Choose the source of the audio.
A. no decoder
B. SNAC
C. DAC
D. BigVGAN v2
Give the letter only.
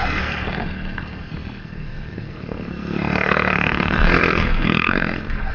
B